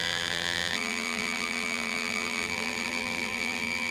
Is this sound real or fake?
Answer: fake